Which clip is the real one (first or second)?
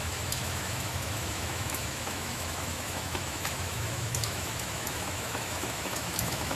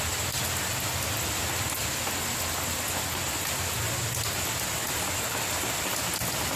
second